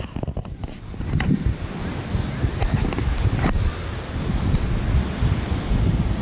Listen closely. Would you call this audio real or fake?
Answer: real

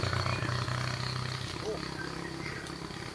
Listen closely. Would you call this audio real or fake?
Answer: real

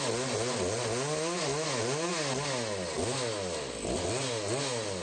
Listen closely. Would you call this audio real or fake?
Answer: real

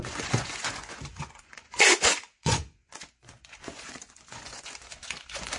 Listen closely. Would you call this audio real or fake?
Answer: fake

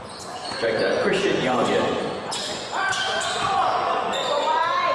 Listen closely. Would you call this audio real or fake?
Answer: fake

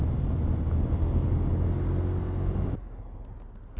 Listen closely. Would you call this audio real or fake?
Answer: real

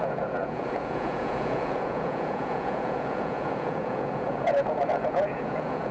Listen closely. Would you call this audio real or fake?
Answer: fake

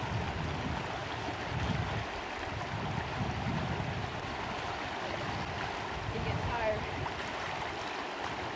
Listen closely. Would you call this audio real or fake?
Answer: real